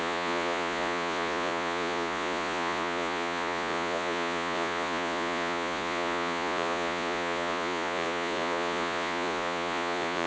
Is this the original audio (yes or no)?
no